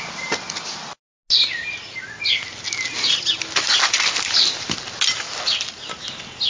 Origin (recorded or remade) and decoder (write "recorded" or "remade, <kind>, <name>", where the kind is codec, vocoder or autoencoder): recorded